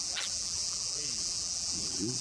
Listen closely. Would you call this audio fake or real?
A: fake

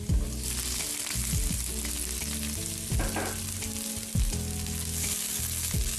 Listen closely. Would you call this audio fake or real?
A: real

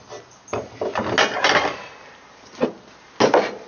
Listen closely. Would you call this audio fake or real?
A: real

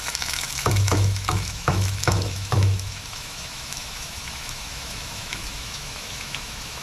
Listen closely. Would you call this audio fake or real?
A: fake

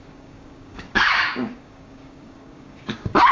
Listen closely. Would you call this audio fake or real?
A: fake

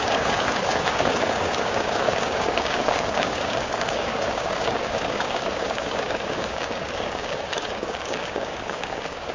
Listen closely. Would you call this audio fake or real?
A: fake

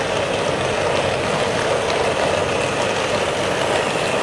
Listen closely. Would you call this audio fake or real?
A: real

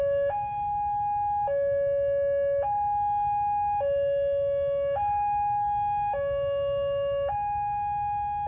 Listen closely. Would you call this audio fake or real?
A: real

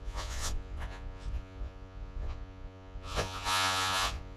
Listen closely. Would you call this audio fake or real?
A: fake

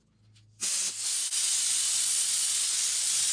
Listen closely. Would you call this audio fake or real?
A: real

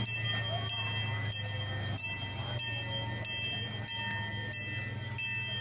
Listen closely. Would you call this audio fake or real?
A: real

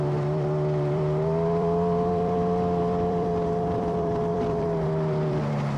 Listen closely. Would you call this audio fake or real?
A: fake